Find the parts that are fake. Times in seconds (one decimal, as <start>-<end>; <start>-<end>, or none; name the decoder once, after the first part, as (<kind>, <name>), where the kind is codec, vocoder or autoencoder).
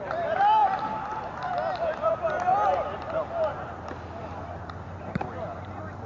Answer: 0.0-0.6 (vocoder, BigVGAN v2); 4.3-6.1